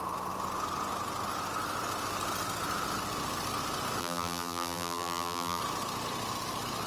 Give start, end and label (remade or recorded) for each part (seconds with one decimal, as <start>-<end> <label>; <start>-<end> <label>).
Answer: 0.0-4.0 recorded; 4.0-5.6 remade; 5.6-6.9 recorded